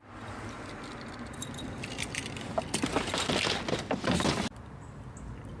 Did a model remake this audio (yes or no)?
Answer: no